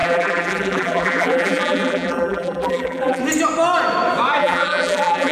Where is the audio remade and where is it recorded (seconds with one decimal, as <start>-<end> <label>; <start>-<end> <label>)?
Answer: 0.0-3.2 remade; 3.2-4.4 recorded; 4.4-5.3 remade